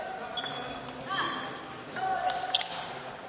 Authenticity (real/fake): real